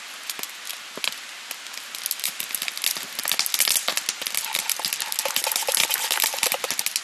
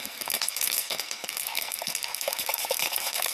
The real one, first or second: first